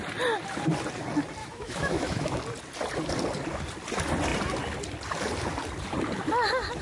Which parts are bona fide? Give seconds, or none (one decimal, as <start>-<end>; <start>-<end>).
0.0-1.4; 2.4-6.8